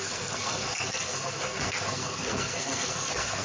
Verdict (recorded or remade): remade